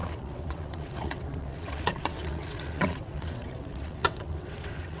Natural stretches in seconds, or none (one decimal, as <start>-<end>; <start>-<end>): none